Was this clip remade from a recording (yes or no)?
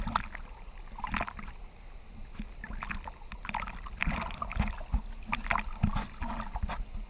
no